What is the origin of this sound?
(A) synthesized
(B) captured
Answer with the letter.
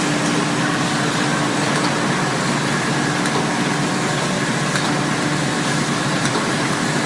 B